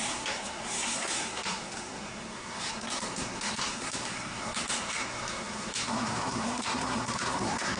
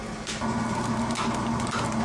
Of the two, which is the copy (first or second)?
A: first